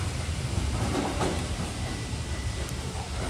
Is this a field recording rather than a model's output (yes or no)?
no